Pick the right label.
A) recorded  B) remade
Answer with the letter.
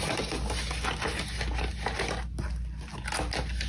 A